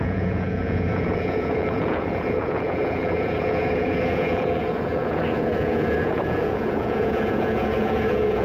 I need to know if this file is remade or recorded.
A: remade